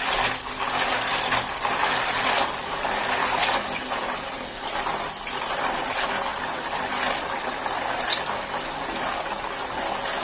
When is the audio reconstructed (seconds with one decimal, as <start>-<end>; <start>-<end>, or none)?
none